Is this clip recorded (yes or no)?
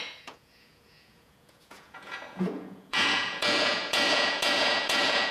no